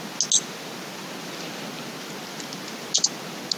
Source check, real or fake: real